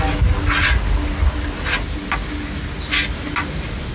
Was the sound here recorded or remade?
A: recorded